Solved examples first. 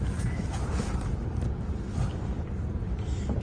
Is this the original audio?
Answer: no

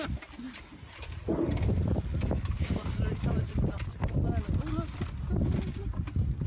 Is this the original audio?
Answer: yes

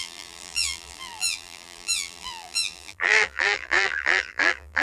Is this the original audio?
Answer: no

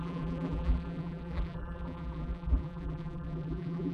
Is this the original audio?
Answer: no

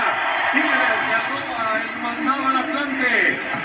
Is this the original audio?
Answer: no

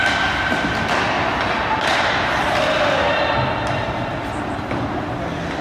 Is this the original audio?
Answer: yes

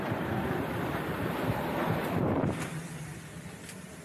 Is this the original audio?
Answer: no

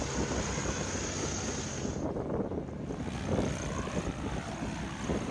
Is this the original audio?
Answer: yes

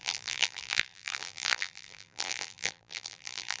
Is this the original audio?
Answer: no